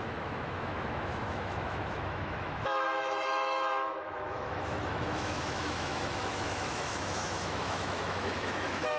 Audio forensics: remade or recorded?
remade